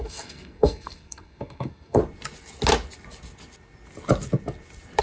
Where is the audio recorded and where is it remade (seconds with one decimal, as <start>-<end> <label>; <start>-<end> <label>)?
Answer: 0.0-2.0 remade; 2.0-5.0 recorded